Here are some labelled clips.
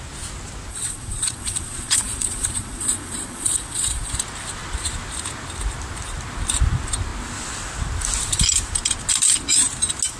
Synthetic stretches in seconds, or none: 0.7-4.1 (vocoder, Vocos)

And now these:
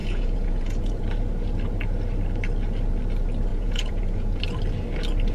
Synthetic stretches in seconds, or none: 0.0-1.0 (vocoder, Vocos); 3.5-4.4